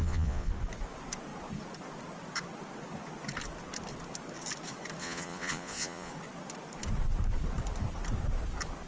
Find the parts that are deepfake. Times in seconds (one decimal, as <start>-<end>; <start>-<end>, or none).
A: 0.0-0.5; 5.0-6.1